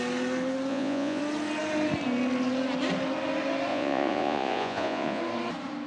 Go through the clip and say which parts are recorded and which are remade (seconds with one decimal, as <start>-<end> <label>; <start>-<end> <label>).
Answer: 0.0-0.7 recorded; 0.7-1.2 remade; 1.2-3.7 recorded; 3.7-5.2 remade; 5.2-5.9 recorded